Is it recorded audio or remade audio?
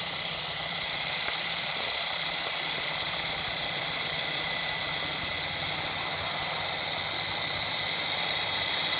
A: remade